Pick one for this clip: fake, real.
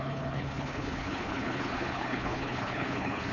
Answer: fake